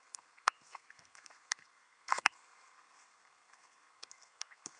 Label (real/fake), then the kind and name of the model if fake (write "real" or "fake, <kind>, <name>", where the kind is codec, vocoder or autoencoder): fake, codec, SNAC